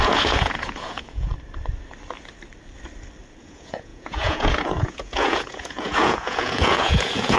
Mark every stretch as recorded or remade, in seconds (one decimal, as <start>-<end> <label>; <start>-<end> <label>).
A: 0.0-1.3 remade; 1.3-3.4 recorded; 3.4-7.4 remade